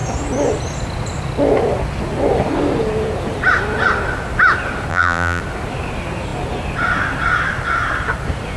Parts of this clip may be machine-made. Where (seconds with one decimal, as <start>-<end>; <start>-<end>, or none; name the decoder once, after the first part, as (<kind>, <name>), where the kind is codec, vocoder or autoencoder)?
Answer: 4.9-5.4 (vocoder, BigVGAN v2)